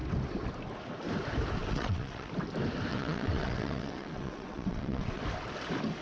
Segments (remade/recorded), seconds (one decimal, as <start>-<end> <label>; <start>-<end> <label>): 0.0-1.6 recorded; 1.6-2.3 remade; 2.3-2.9 recorded; 2.9-5.2 remade; 5.2-6.0 recorded